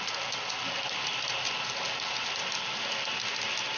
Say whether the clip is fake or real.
real